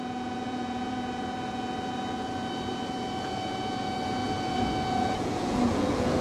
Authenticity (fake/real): fake